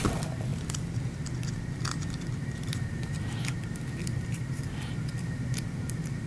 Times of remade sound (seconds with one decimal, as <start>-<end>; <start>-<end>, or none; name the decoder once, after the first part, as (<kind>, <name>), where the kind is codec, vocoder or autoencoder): 0.0-0.5 (vocoder, BigVGAN v2); 1.5-6.3